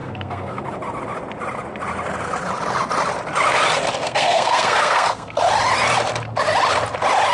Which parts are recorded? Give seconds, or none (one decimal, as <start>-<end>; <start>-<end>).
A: 0.6-4.0; 5.4-7.3